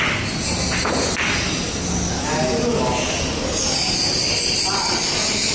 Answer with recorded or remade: recorded